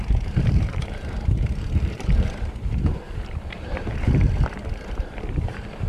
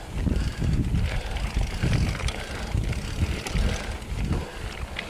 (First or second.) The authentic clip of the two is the second